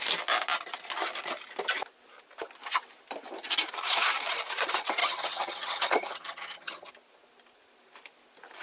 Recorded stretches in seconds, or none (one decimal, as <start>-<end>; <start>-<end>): 0.0-5.0; 6.9-8.6